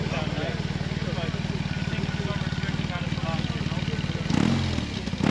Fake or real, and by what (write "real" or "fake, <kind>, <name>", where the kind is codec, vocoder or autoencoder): real